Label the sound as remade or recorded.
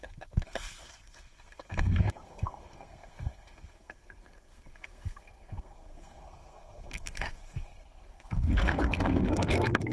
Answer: remade